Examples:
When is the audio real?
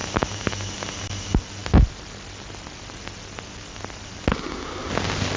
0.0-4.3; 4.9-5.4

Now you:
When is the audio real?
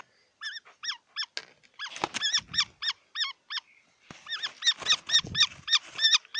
0.0-6.4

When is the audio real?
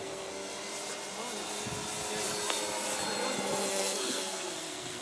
0.7-3.7